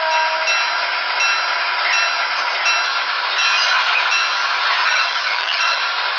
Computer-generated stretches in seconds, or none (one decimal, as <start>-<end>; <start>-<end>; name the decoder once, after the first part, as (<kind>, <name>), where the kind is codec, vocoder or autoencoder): 4.8-5.8 (vocoder, HiFi-GAN)